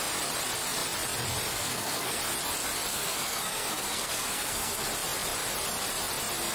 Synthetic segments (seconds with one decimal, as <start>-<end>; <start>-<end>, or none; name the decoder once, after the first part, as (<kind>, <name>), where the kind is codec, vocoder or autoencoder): 1.5-2.2 (codec, SNAC); 2.9-4.9